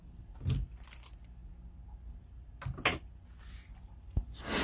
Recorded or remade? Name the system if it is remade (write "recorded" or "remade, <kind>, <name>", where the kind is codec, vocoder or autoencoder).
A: recorded